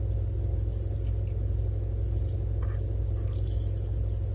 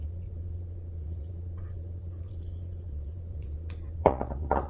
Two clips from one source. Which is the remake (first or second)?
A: second